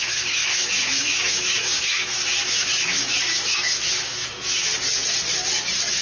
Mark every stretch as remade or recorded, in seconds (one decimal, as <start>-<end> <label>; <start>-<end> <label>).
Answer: 0.0-4.7 remade; 4.7-6.0 recorded